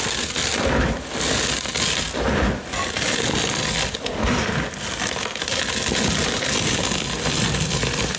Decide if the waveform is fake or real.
real